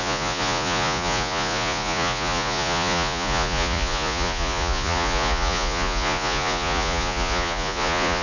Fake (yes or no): yes